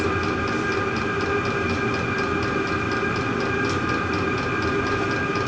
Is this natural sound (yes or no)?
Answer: yes